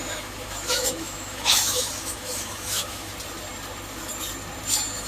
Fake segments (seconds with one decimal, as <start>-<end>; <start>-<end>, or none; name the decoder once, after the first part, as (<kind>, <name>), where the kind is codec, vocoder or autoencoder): 0.0-3.1 (autoencoder, DAC-VAE)